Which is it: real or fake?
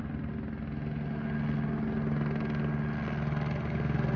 real